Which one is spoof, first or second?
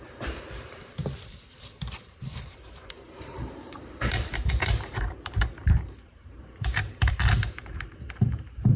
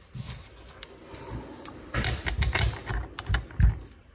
first